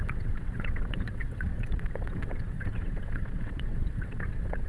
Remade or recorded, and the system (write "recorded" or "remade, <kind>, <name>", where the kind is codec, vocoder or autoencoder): remade, vocoder, WaveNeXt